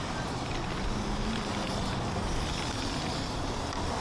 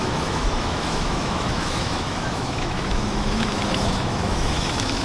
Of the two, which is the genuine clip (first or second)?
first